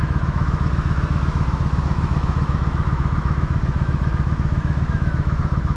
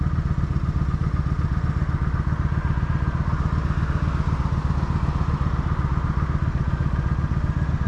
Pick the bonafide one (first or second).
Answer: second